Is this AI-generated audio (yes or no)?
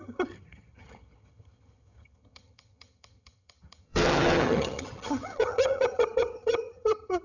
yes